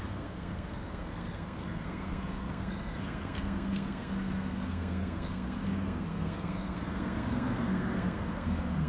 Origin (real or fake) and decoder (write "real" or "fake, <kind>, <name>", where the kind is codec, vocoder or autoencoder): fake, codec, SNAC